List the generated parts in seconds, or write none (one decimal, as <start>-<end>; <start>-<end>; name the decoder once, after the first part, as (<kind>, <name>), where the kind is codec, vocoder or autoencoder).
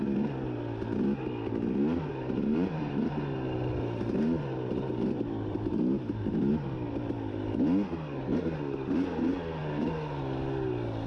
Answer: 2.1-6.5 (vocoder, BigVGAN v2)